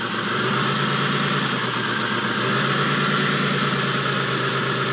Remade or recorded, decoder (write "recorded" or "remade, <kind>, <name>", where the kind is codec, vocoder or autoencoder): recorded